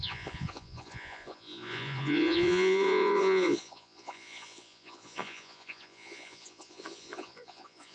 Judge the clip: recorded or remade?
remade